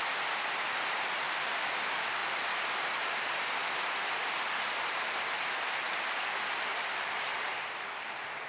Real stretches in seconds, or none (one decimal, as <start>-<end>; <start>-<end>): none